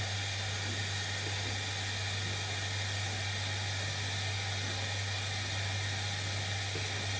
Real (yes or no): yes